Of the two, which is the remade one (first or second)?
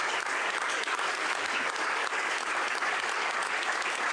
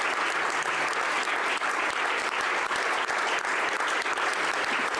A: first